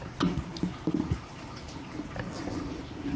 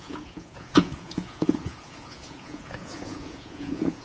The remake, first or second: second